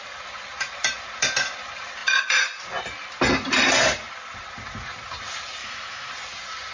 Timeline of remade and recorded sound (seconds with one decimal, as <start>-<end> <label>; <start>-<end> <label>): 0.0-5.6 recorded; 5.6-6.1 remade; 6.1-6.7 recorded